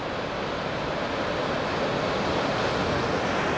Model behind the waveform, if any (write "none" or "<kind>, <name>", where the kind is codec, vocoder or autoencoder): none